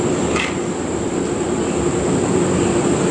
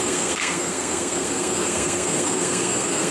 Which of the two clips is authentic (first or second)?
first